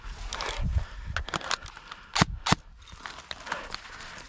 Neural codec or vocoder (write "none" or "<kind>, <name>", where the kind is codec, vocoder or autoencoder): none